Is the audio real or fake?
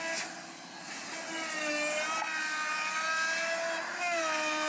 real